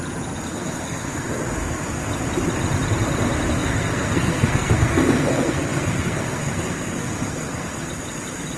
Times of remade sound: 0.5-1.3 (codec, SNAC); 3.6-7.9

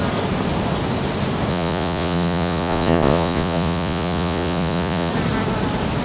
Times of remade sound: 1.5-5.1 (vocoder, Vocos)

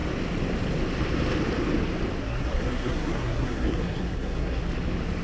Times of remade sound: 2.2-4.6 (codec, SNAC)

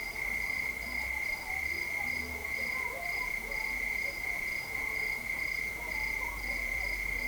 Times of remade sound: 2.4-6.8 (vocoder, Vocos)

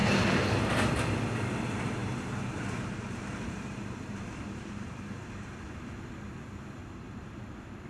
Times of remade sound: 2.0-6.1 (vocoder, BigVGAN v2); 6.8-7.9

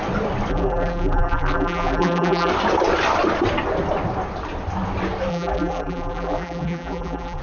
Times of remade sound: 0.5-2.5 (vocoder, BigVGAN v2); 5.3-7.4

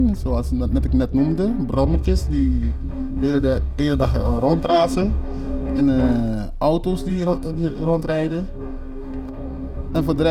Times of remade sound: 1.7-5.8 (codec, DAC); 7.1-9.9